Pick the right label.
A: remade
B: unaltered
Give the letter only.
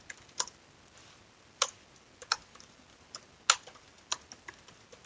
B